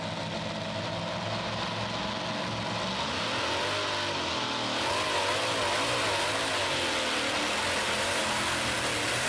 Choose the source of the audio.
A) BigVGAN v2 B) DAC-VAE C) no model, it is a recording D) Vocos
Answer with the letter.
C